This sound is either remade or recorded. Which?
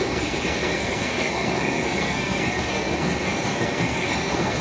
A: remade